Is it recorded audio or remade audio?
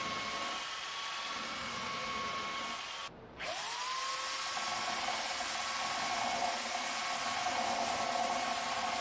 recorded